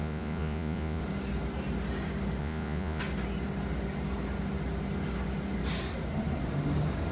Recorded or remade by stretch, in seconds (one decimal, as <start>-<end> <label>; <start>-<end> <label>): 0.0-1.0 remade; 1.0-2.4 recorded; 2.4-3.0 remade; 3.0-7.1 recorded